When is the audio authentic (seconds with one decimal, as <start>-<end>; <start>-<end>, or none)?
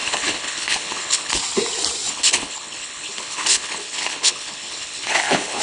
1.3-2.1